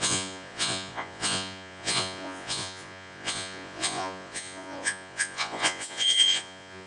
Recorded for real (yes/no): no